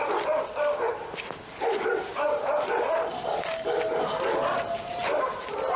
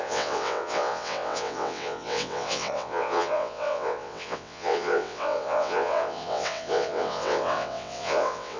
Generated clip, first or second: second